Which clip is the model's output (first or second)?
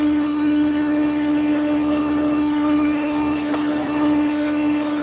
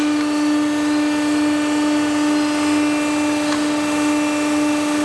first